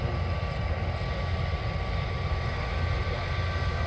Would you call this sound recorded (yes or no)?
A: yes